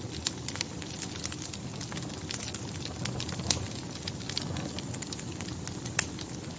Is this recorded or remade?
recorded